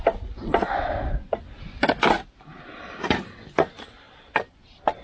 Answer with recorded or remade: recorded